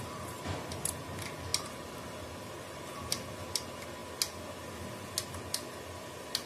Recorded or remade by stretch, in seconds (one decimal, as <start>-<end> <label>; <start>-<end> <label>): 0.0-6.5 recorded